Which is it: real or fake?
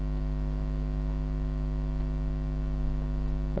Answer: real